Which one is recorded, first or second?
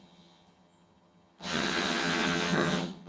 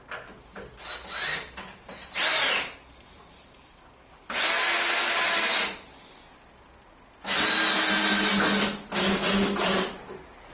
second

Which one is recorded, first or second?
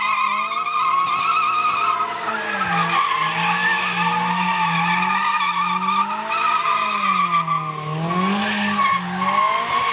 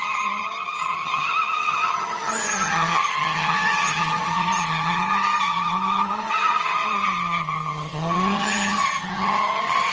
first